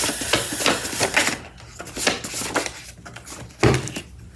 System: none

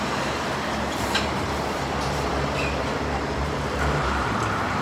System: vocoder, BigVGAN v2